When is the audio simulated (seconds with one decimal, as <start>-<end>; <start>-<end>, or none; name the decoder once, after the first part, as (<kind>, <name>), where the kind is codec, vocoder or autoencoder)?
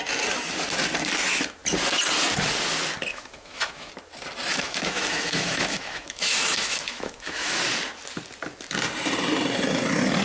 3.1-3.9 (autoencoder, DAC-VAE); 4.5-7.6